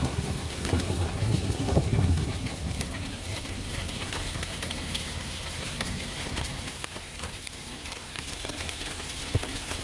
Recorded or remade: remade